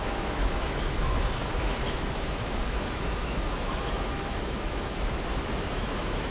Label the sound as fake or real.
fake